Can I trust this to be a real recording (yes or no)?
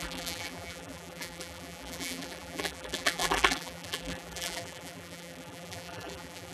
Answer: no